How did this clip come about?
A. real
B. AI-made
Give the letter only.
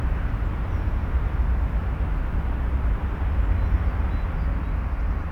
A